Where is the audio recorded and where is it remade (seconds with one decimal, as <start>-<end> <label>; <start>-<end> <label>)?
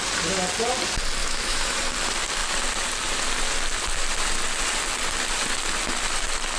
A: 0.0-1.2 recorded; 1.2-1.8 remade; 1.8-6.6 recorded